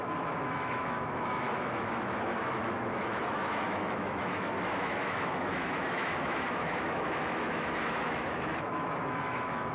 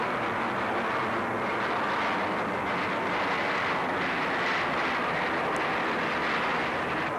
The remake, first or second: first